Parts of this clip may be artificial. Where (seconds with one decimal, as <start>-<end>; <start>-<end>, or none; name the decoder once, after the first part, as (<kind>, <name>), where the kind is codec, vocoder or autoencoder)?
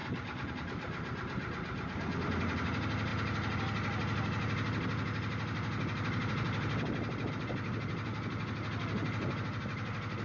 none